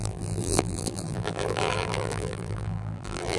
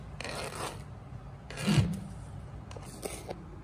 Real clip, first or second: second